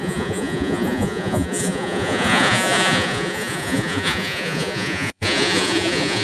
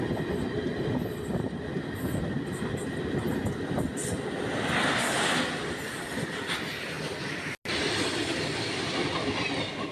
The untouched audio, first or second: second